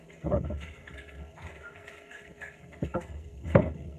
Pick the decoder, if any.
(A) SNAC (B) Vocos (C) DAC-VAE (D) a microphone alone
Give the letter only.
A